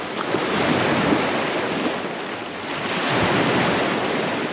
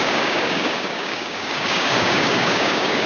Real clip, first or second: first